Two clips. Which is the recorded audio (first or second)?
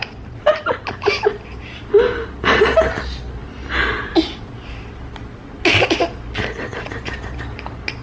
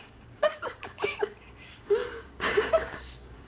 first